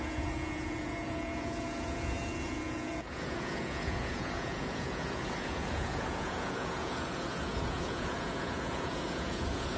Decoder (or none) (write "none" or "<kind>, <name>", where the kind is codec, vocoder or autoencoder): vocoder, Vocos